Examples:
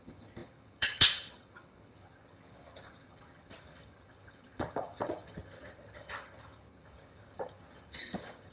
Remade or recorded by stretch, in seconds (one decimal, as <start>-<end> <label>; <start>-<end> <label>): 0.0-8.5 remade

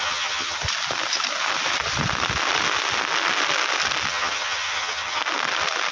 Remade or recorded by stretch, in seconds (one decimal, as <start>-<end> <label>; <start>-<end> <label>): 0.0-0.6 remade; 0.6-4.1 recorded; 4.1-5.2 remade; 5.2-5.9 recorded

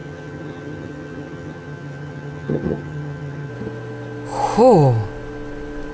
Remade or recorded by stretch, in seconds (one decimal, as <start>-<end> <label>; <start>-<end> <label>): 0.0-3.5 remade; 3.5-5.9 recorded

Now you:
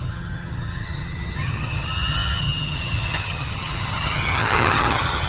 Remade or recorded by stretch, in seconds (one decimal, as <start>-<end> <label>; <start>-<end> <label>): 0.0-5.3 remade